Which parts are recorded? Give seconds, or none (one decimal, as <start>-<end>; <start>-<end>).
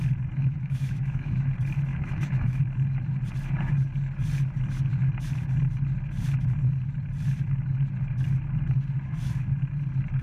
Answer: 0.0-0.4; 1.5-1.9; 2.6-10.2